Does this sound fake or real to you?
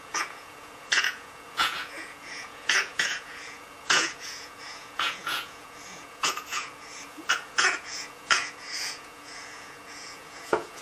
fake